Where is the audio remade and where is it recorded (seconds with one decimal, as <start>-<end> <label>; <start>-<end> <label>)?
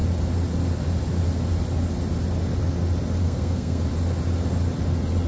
0.0-3.2 recorded; 3.2-3.8 remade; 3.8-5.3 recorded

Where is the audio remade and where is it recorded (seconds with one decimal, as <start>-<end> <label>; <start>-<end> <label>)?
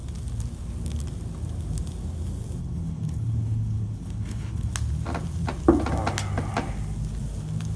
0.0-2.6 recorded; 2.6-4.7 remade; 4.7-7.8 recorded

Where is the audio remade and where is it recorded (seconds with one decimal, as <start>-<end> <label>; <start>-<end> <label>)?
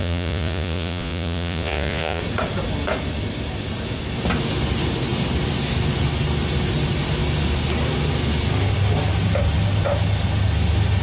0.0-2.2 remade; 2.2-11.0 recorded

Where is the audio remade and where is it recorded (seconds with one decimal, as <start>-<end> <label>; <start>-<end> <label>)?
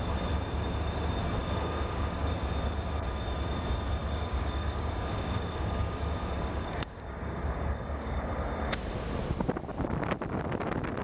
0.0-1.4 recorded; 1.4-2.3 remade; 2.3-4.0 recorded; 4.0-8.3 remade; 8.3-11.0 recorded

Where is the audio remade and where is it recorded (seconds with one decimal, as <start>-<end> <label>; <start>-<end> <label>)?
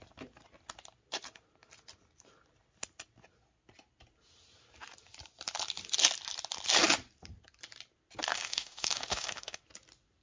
0.0-8.3 recorded; 8.3-9.6 remade; 9.6-10.2 recorded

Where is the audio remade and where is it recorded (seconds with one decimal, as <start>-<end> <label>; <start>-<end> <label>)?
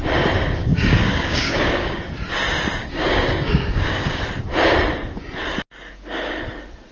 0.0-0.6 recorded; 0.6-2.0 remade; 2.0-2.8 recorded; 2.8-4.2 remade; 4.2-6.9 recorded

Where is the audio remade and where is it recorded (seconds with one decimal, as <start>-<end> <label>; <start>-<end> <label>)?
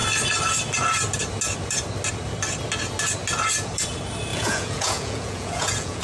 0.0-4.3 recorded; 4.3-6.0 remade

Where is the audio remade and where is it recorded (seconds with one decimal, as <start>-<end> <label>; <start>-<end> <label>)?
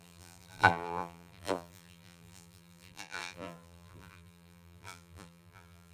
0.0-5.9 remade